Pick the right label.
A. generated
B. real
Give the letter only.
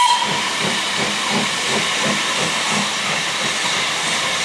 B